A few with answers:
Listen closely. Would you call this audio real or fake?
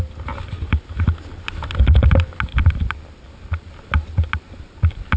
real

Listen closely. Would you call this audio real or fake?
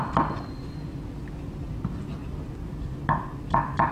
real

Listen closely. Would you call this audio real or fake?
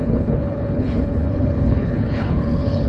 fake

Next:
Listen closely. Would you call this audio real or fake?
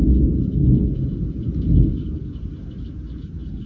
real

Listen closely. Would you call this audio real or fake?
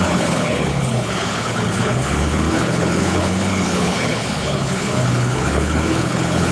fake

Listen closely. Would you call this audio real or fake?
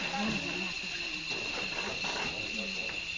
real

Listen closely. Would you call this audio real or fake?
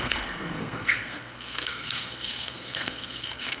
fake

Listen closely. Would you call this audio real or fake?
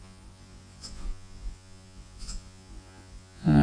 fake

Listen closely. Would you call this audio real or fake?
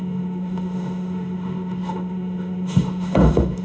fake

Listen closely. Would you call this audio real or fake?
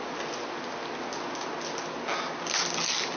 real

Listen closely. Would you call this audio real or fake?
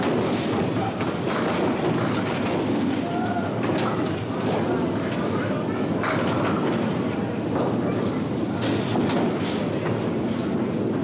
real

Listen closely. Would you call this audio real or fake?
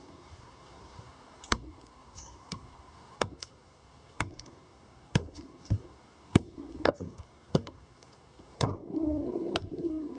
fake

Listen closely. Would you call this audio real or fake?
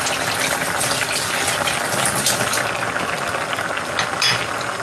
real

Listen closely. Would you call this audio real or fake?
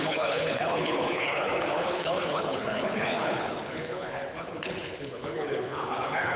fake